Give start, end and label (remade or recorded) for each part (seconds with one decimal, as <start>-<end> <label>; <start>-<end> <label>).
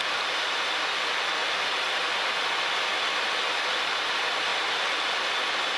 0.0-4.5 recorded; 4.5-5.8 remade